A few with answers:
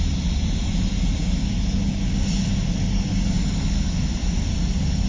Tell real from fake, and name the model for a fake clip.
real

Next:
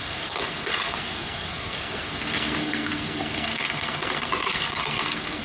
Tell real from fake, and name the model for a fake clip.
fake, codec, SNAC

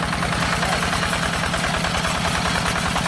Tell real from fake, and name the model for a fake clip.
real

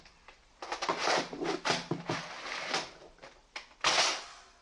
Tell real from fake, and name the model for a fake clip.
real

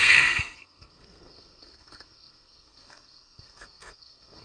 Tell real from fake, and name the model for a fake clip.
fake, codec, SNAC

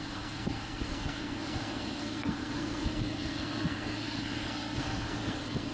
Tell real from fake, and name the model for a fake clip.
fake, codec, SNAC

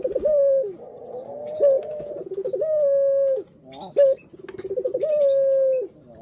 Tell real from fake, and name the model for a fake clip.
real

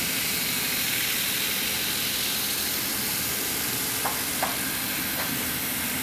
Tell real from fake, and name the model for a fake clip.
real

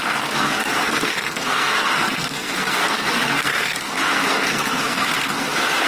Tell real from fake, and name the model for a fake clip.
fake, codec, SNAC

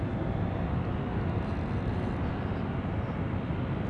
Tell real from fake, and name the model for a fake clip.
real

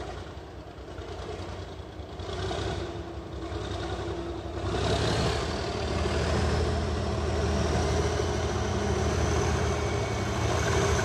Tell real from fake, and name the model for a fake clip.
real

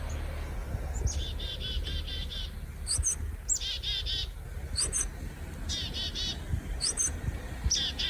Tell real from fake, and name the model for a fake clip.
real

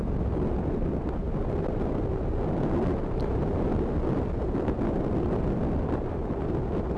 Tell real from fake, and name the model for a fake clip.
real